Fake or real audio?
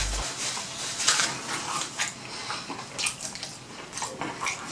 real